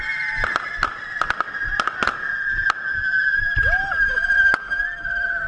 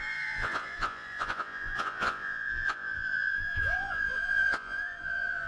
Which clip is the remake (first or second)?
second